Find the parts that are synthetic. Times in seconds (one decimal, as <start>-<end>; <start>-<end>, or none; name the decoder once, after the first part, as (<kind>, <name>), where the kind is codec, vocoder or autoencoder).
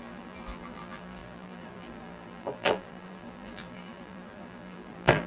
0.0-5.3 (vocoder, BigVGAN v2)